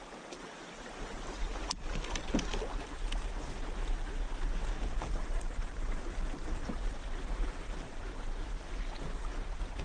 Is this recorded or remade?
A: recorded